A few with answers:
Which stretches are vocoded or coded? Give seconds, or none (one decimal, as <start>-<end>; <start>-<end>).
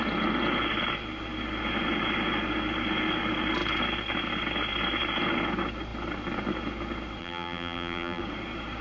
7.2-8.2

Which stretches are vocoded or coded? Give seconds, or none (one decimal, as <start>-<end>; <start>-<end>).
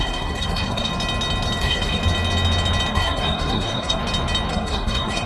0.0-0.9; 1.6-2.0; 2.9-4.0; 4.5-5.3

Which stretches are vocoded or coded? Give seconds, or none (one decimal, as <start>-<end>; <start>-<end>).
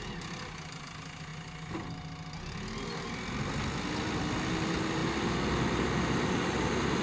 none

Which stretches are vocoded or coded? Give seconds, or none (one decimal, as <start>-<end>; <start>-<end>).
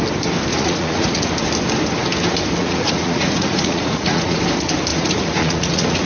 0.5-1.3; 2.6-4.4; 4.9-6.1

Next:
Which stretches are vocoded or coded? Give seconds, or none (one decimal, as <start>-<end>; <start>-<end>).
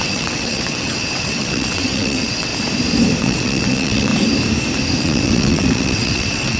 0.0-2.5; 3.2-4.1; 5.0-6.6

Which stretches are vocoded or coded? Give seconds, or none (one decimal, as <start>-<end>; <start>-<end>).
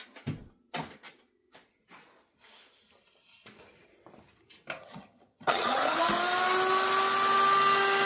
4.8-6.0